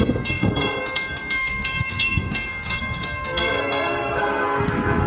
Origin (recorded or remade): remade